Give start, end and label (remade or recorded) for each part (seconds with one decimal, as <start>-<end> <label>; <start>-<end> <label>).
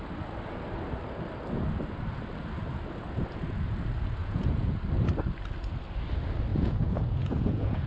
0.0-4.2 recorded; 4.2-4.8 remade; 4.8-6.5 recorded; 6.5-7.9 remade